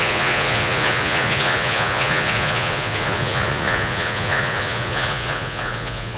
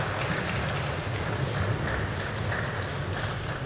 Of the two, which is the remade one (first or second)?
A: first